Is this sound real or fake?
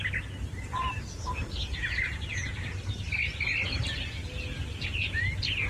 real